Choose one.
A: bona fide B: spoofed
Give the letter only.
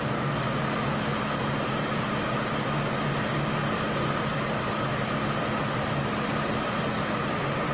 A